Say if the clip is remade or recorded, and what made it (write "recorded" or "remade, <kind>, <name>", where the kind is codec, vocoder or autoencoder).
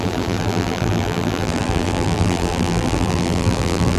remade, vocoder, BigVGAN v2